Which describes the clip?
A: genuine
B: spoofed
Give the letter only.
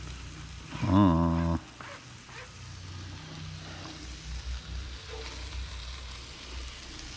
A